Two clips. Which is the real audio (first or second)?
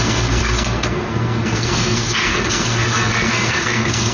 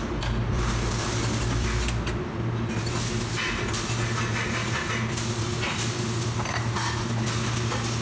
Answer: second